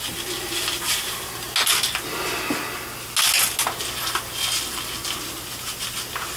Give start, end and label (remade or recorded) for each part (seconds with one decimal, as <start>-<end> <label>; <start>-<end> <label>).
0.0-6.4 recorded